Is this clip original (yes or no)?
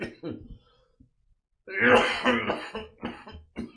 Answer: yes